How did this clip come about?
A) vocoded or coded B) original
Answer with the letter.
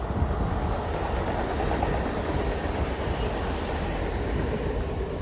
B